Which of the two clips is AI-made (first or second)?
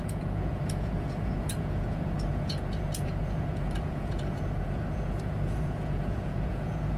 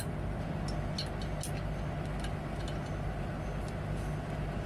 first